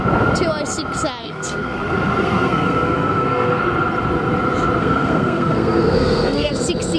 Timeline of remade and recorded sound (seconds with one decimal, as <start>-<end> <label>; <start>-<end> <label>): 0.0-1.2 recorded; 1.2-3.6 remade; 3.6-4.8 recorded; 4.8-6.5 remade; 6.5-7.0 recorded